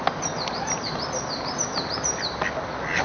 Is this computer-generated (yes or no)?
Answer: no